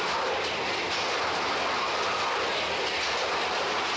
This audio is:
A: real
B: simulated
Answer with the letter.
A